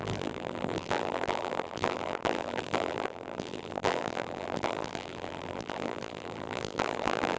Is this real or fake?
fake